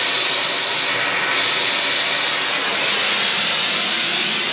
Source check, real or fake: real